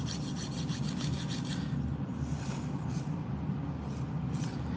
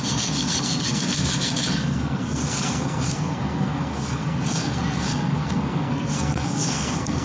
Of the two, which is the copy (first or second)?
second